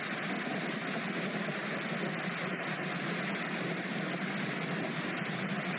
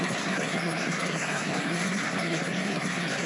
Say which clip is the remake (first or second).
second